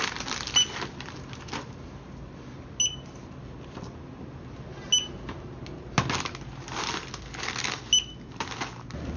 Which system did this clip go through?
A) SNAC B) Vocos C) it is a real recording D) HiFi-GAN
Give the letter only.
C